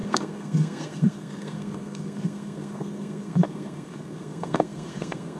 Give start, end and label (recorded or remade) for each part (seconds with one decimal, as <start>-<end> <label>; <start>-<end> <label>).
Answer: 0.0-5.4 remade